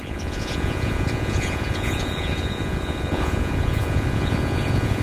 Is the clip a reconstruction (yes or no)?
yes